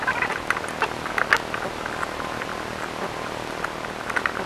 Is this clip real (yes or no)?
yes